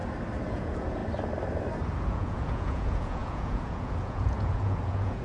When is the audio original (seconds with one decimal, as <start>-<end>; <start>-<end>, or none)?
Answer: 0.0-0.5; 1.0-2.0